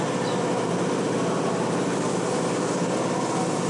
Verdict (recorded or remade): recorded